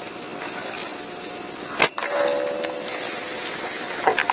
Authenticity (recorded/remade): recorded